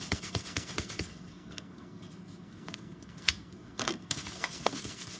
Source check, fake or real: fake